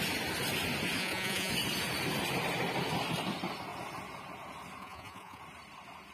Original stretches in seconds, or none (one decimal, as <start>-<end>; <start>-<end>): 0.0-1.0; 1.5-4.8; 5.4-6.1